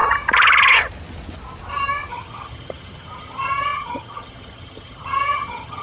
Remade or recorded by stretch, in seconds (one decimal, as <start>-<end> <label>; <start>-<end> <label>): 0.0-2.1 recorded; 2.1-5.8 remade